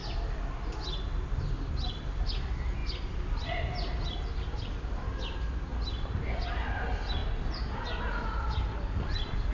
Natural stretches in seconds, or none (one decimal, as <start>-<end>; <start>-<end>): 0.0-9.5